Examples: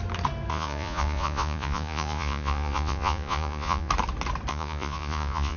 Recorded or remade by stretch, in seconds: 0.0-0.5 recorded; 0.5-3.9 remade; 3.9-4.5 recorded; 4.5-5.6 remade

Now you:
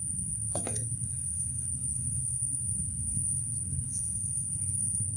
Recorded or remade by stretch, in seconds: 0.0-5.2 remade

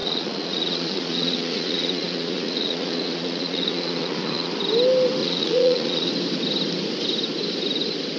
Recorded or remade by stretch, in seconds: 0.0-4.5 remade; 4.5-5.2 recorded; 5.2-6.1 remade; 6.1-8.2 recorded

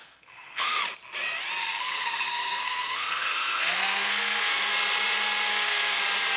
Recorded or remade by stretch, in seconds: 0.0-0.8 remade; 0.8-1.6 recorded; 1.6-4.7 remade; 4.7-5.5 recorded; 5.5-6.0 remade; 6.0-6.4 recorded

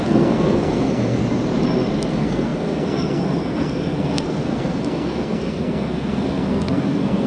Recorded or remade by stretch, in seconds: 0.0-1.2 remade; 1.2-2.1 recorded; 2.1-7.3 remade

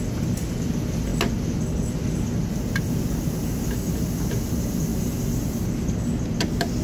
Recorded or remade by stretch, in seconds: 0.0-6.8 recorded

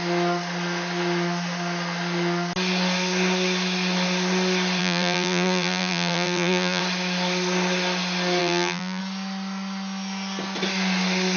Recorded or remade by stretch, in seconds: 0.0-4.8 recorded; 4.8-6.8 remade; 6.8-8.4 recorded; 8.4-9.0 remade; 9.0-11.4 recorded

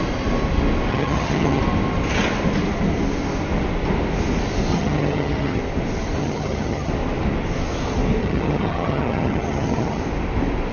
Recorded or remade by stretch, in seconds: 0.0-0.9 recorded; 0.9-1.6 remade; 1.6-4.7 recorded; 4.7-5.6 remade; 5.6-6.2 recorded; 6.2-6.9 remade; 6.9-8.2 recorded; 8.2-10.0 remade; 10.0-10.7 recorded